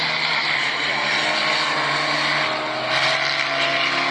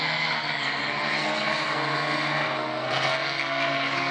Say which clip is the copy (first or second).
second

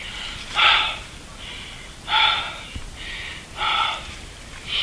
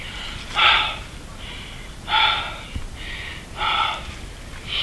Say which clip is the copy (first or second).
first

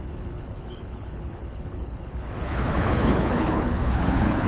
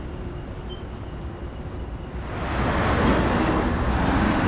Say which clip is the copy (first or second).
first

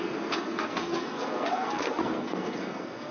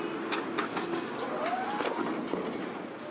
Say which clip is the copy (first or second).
first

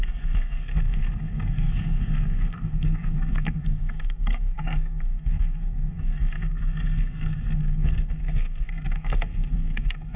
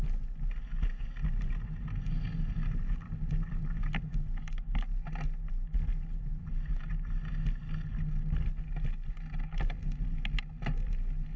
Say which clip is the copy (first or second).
first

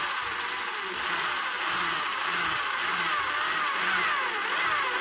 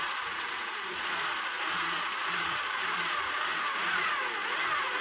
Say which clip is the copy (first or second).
second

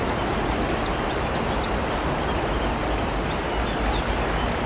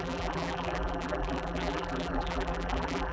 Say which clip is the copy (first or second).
second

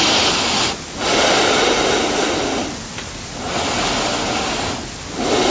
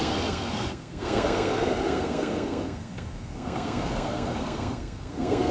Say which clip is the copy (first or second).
second